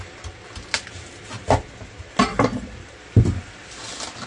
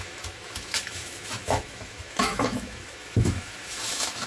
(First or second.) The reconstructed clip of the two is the second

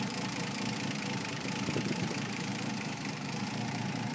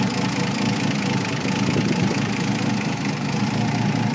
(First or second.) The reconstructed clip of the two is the first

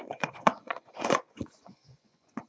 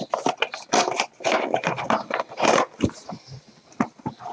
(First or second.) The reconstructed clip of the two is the first